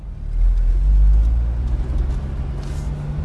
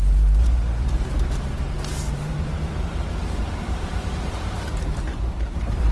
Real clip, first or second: first